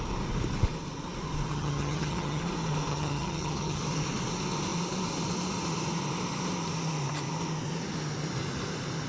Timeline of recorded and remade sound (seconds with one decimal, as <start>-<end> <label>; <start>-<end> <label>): 0.0-1.5 recorded; 1.5-2.4 remade; 2.4-2.9 recorded; 2.9-3.8 remade; 3.8-9.1 recorded